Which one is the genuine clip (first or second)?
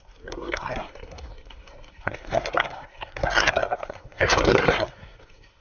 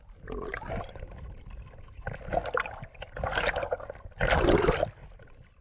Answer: second